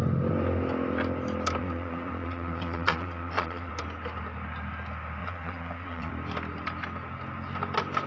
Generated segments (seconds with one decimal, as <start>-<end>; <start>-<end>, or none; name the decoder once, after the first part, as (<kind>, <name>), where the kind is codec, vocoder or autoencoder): 1.6-3.7 (vocoder, Vocos); 5.2-6.1